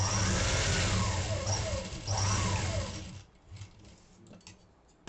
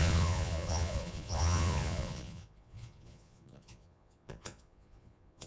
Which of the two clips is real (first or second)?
first